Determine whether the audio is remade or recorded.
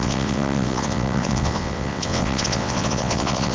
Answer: remade